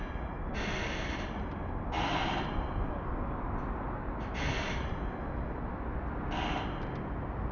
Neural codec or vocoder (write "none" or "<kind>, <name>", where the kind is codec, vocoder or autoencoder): none